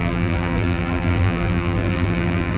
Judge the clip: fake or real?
fake